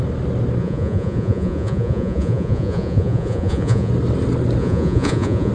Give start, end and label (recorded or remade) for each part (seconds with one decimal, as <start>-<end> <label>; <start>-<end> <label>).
0.0-0.6 recorded; 0.6-3.9 remade; 3.9-4.6 recorded; 4.6-5.5 remade